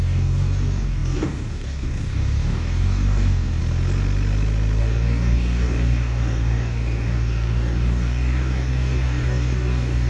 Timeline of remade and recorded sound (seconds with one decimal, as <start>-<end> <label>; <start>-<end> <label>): 0.0-3.6 remade; 3.6-4.8 recorded; 4.8-10.1 remade